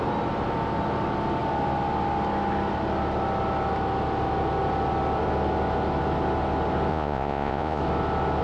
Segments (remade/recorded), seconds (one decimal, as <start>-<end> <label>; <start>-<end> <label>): 0.0-6.9 recorded; 6.9-7.8 remade; 7.8-8.4 recorded